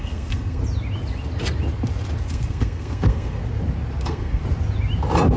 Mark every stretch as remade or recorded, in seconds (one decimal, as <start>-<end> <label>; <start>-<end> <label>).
0.0-0.6 remade; 0.6-2.2 recorded; 2.2-3.4 remade; 3.4-4.0 recorded; 4.0-4.4 remade; 4.4-5.4 recorded